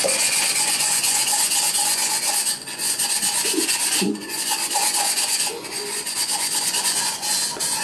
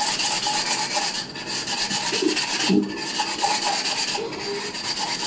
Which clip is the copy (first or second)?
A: first